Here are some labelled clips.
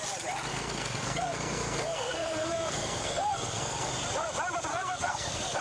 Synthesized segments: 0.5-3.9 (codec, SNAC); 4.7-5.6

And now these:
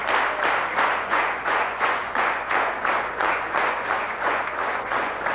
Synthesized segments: 0.7-5.3 (vocoder, Vocos)

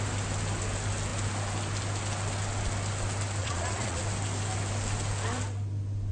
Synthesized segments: 3.4-4.0 (vocoder, Vocos)

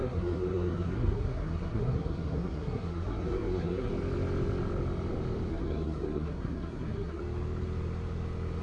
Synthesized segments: 0.0-3.9 (codec, SNAC); 5.5-7.2